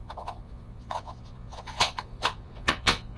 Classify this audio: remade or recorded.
remade